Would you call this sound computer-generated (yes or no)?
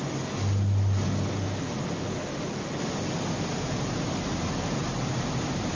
no